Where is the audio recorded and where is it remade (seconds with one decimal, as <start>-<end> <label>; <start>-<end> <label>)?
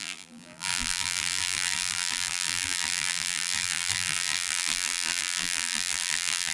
0.0-6.5 remade